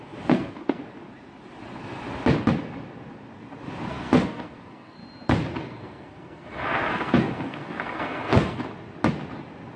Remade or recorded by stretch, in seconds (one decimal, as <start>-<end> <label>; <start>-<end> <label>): 0.0-0.8 remade; 0.8-3.9 recorded; 3.9-5.0 remade; 5.0-5.6 recorded; 5.6-8.6 remade; 8.6-9.8 recorded